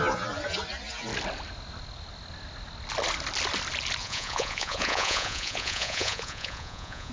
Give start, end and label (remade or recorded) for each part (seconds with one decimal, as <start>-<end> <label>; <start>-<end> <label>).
0.0-4.0 recorded; 4.0-7.1 remade

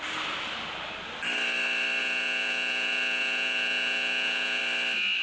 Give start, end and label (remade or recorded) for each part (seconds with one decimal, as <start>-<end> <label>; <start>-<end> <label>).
0.0-2.0 recorded; 2.0-4.6 remade; 4.6-5.2 recorded